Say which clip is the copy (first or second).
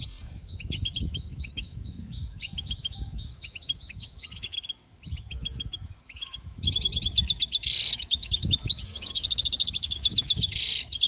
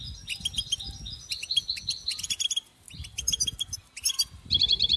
first